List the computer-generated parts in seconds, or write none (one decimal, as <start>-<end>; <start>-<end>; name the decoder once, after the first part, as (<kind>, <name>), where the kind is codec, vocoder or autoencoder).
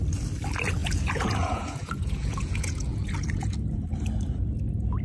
0.8-3.8 (vocoder, Vocos)